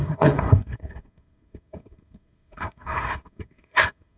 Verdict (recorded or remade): remade